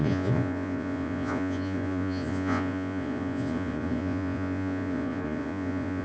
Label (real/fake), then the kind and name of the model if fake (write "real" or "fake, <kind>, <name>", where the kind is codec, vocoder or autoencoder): fake, vocoder, Vocos